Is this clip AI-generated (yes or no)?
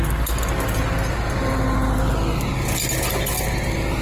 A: no